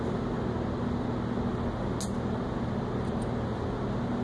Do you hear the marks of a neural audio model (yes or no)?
no